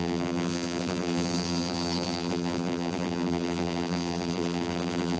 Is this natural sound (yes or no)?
no